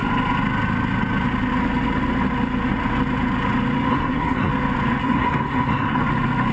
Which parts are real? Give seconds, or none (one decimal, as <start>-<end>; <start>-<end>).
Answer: 0.0-3.9; 4.5-5.0; 6.0-6.5